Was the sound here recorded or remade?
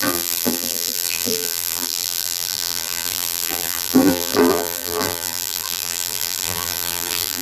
remade